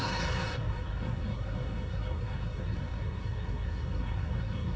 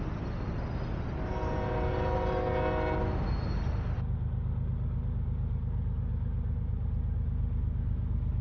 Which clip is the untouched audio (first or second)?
second